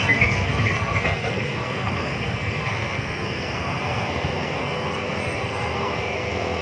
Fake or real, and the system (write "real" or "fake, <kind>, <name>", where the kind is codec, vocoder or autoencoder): fake, codec, SNAC